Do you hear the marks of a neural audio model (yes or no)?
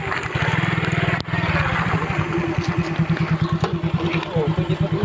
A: no